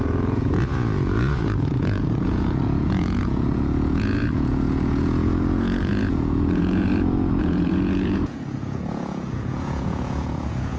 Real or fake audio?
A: fake